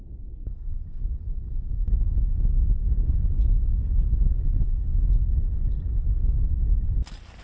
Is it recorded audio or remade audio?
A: recorded